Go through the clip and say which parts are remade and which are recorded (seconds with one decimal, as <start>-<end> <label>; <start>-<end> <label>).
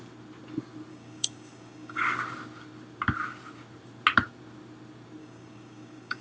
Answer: 0.0-0.9 recorded; 0.9-2.0 remade; 2.0-5.2 recorded; 5.2-6.2 remade